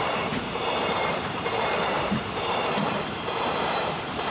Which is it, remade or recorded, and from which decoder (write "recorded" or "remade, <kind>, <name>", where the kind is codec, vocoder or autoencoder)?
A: remade, vocoder, BigVGAN v2